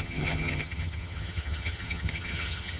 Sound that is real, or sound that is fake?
fake